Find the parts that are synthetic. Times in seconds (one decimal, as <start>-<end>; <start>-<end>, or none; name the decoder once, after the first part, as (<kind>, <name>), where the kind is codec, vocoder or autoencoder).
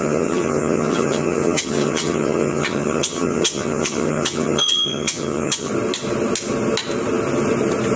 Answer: 0.0-5.7 (vocoder, HiFi-GAN)